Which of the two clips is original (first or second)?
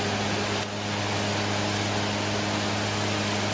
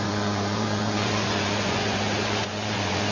first